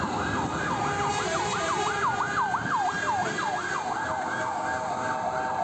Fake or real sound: real